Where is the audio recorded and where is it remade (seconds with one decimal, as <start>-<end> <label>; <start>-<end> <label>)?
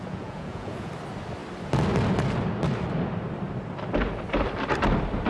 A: 0.0-0.9 remade; 0.9-5.3 recorded